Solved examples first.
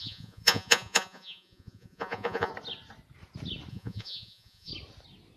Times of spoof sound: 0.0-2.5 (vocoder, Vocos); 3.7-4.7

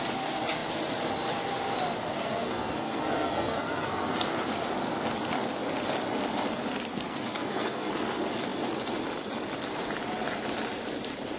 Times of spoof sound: 2.2-4.1 (codec, SNAC); 6.9-7.9

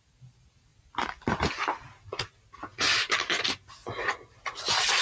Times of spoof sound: none

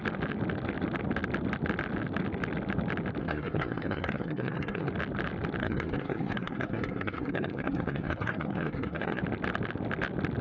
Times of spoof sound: 3.2-4.9 (codec, SNAC); 5.6-9.2

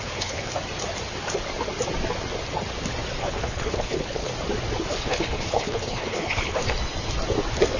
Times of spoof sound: 0.0-0.5 (codec, HILCodec); 3.2-4.3; 4.9-6.6

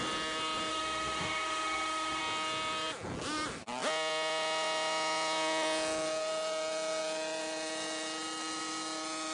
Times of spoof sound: 0.7-2.2 (autoencoder, DAC-VAE)

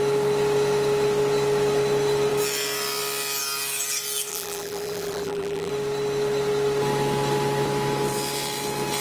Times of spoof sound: 4.3-5.7 (vocoder, BigVGAN v2)